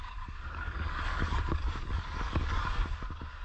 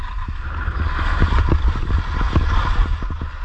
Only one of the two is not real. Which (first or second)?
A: first